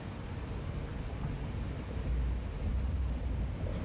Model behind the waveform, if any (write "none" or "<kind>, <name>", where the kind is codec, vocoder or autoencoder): none